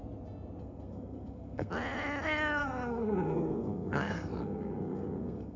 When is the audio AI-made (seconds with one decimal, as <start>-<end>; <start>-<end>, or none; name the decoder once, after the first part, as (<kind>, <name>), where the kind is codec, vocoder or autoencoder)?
0.6-1.7 (codec, SNAC); 2.6-5.6